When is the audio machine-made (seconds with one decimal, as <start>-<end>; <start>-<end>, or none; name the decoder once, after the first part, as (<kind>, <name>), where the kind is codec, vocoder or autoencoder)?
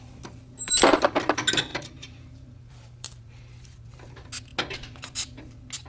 1.7-3.2 (vocoder, BigVGAN v2)